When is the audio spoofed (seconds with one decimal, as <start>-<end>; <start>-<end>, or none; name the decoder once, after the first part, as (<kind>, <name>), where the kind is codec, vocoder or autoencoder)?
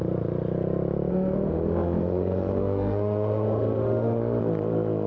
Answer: 1.1-4.2 (autoencoder, DAC-VAE)